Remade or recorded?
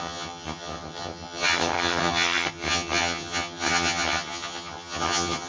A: remade